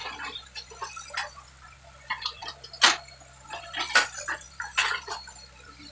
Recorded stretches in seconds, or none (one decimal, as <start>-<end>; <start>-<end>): 0.0-5.9